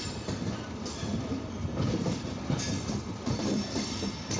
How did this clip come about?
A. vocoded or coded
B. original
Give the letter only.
A